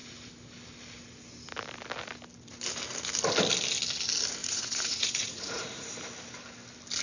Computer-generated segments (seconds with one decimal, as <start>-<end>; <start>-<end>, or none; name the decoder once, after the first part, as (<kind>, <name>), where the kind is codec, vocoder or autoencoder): 4.4-5.9 (vocoder, Vocos)